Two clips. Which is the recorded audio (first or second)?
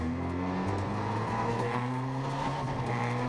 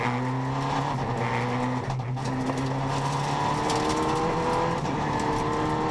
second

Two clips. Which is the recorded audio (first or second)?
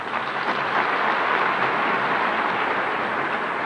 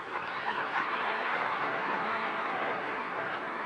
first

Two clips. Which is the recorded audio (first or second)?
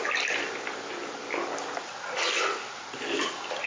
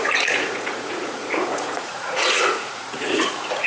first